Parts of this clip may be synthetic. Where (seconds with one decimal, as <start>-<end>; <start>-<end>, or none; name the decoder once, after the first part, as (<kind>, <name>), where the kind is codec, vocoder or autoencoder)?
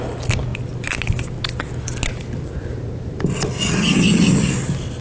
none